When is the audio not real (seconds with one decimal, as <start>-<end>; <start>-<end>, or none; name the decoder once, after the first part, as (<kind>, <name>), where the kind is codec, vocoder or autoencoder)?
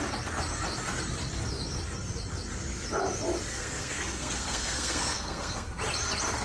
3.5-5.8 (codec, SNAC)